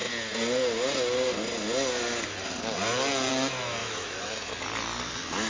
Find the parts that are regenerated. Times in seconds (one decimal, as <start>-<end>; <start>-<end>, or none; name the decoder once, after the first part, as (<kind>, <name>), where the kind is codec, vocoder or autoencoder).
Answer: 3.8-4.5 (autoencoder, DAC-VAE)